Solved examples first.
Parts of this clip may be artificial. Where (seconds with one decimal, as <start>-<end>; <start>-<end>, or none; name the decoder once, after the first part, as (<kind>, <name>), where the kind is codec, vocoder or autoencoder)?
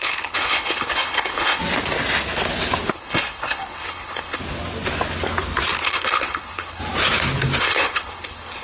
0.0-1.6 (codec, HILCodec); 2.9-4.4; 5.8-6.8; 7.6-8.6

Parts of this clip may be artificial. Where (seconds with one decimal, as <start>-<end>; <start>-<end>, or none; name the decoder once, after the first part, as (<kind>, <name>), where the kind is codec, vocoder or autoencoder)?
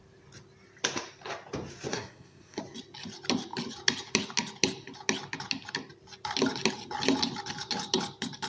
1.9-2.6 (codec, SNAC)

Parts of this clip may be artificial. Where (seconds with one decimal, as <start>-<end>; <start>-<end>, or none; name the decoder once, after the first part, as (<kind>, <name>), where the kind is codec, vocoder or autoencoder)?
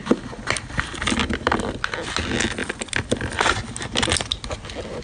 none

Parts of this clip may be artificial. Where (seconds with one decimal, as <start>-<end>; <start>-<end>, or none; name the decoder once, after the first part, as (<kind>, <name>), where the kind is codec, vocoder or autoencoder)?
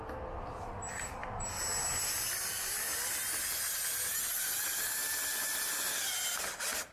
none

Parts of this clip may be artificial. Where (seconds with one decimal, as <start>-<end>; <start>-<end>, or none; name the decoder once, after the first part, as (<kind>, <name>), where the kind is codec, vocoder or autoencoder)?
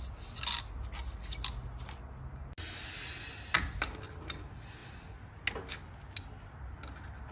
none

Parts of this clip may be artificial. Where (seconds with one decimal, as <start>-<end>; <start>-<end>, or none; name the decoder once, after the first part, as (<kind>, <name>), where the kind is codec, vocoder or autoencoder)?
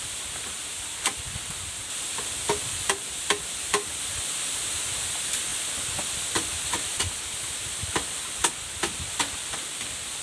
none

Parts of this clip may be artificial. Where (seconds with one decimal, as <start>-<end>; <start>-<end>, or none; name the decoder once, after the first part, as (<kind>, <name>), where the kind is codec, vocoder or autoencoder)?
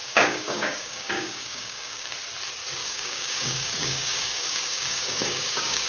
0.0-2.1 (codec, DAC); 2.8-5.9